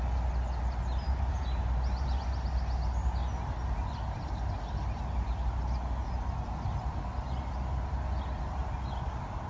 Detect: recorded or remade recorded